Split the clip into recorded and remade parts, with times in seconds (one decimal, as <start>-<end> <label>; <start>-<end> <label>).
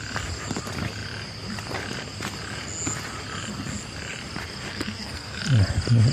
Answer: 0.0-4.7 recorded; 4.7-5.4 remade; 5.4-6.1 recorded